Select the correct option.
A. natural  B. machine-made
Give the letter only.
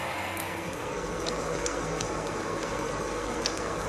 B